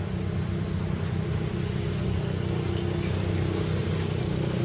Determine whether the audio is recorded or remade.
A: recorded